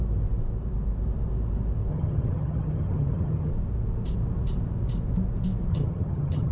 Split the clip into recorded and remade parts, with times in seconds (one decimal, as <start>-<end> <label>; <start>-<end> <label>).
0.0-1.9 recorded; 1.9-3.5 remade; 3.5-5.7 recorded; 5.7-6.5 remade